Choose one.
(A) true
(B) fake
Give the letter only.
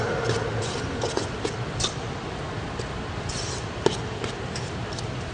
B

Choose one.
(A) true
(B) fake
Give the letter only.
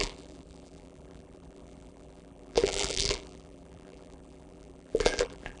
B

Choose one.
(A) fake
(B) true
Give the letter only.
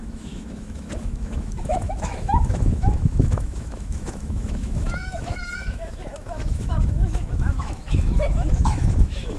A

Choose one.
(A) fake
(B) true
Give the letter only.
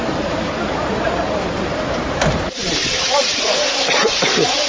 A